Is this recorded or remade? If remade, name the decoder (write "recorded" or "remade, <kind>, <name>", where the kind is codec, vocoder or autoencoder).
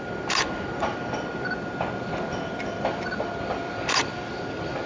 recorded